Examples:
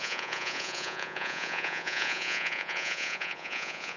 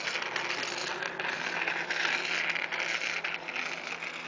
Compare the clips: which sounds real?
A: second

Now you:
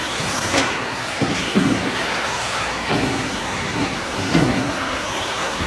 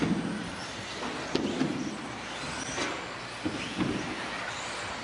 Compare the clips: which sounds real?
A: second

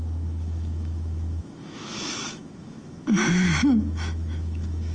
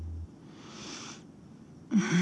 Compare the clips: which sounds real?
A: second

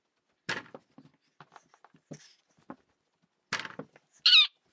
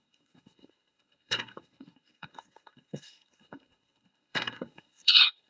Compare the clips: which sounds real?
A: first